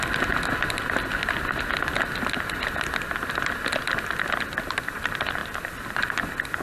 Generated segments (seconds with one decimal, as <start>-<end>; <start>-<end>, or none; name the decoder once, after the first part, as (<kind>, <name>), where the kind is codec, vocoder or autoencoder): none